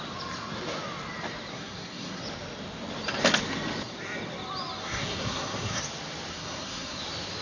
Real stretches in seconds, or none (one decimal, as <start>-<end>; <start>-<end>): 0.0-1.5; 2.2-4.8; 5.8-6.3; 7.0-7.4